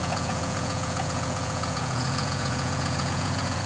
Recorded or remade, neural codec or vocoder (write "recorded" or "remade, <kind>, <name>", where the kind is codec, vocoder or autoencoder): remade, vocoder, Vocos